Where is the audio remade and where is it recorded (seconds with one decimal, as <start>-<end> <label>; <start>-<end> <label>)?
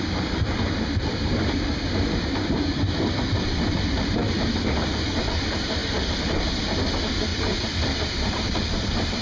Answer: 0.0-4.2 remade; 4.2-5.2 recorded; 5.2-9.2 remade